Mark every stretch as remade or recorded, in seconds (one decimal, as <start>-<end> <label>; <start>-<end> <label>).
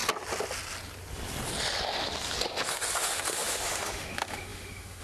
0.0-3.0 recorded; 3.0-5.0 remade